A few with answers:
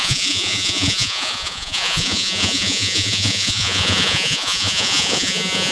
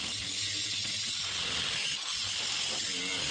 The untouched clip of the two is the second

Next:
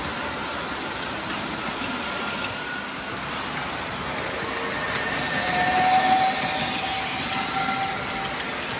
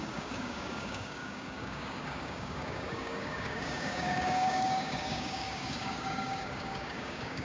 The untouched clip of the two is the first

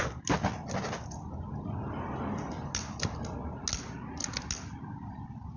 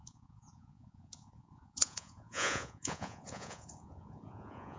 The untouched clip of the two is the first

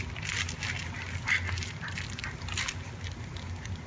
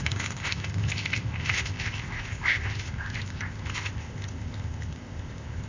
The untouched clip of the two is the first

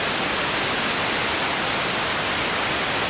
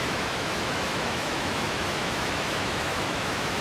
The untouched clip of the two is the first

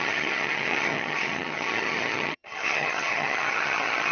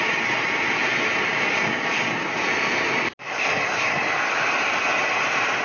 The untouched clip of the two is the second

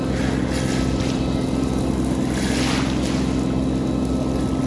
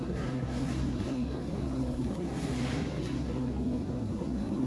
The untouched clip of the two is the first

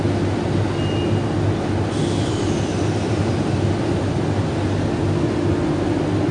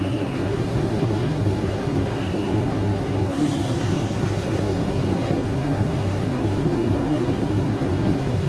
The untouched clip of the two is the first